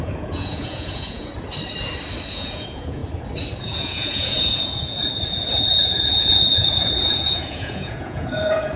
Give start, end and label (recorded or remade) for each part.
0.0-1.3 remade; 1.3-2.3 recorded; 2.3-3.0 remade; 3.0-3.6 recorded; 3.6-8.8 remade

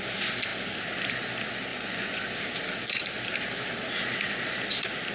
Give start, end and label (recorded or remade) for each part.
0.0-1.7 recorded; 1.7-2.2 remade; 2.2-5.1 recorded

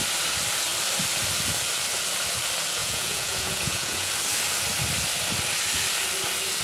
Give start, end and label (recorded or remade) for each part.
0.0-2.8 recorded; 2.8-4.1 remade; 4.1-6.6 recorded

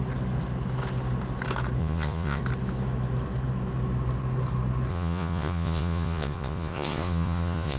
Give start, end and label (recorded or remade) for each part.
0.0-1.8 recorded; 1.8-2.4 remade; 2.4-4.9 recorded; 4.9-7.8 remade

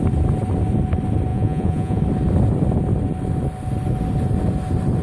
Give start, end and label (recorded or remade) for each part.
0.0-1.3 recorded; 1.3-2.0 remade; 2.0-5.0 recorded

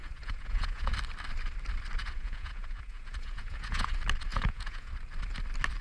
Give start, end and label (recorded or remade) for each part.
0.0-0.9 remade; 0.9-2.0 recorded; 2.0-3.9 remade; 3.9-4.3 recorded; 4.3-4.9 remade; 4.9-5.8 recorded

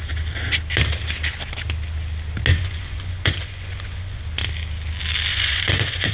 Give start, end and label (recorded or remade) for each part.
0.0-2.5 recorded; 2.5-4.2 remade; 4.2-5.3 recorded; 5.3-6.1 remade

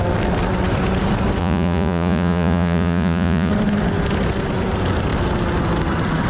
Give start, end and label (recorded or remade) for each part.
0.0-1.4 recorded; 1.4-3.5 remade; 3.5-6.3 recorded